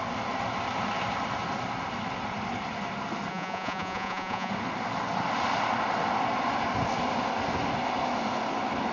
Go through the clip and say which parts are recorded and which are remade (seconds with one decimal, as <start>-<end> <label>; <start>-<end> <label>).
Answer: 0.0-3.3 recorded; 3.3-4.5 remade; 4.5-8.9 recorded